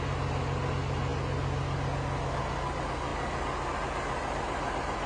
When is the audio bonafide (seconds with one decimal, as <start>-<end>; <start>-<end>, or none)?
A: 0.0-5.1